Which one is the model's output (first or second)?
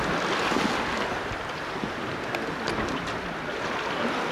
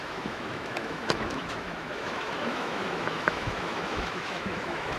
second